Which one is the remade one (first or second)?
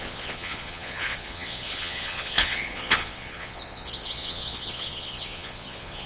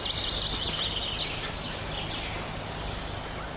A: first